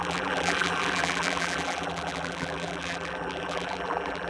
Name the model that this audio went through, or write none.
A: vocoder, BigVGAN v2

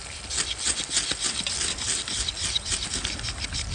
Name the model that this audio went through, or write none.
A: none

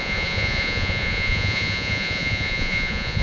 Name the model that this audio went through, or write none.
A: vocoder, Vocos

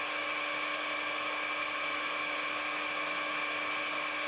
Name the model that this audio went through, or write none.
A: none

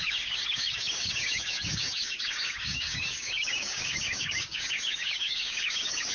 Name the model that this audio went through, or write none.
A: codec, DAC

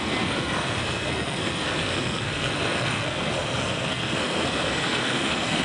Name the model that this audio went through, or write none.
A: codec, SNAC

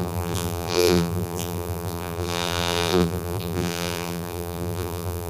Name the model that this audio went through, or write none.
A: vocoder, BigVGAN v2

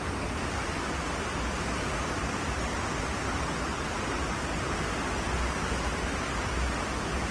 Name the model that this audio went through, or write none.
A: none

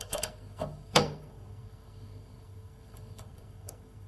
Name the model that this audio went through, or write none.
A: codec, SNAC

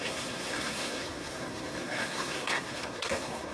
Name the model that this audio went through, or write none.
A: codec, SNAC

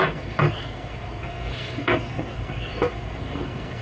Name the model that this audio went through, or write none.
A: codec, SNAC